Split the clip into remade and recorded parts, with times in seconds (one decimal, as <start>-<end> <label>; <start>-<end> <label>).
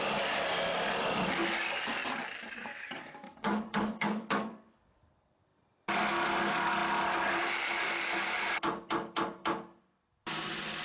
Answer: 0.0-2.7 recorded; 2.7-5.1 remade; 5.1-10.8 recorded